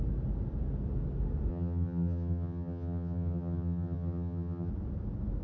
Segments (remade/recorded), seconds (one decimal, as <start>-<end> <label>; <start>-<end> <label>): 0.0-1.5 recorded; 1.5-4.7 remade; 4.7-5.4 recorded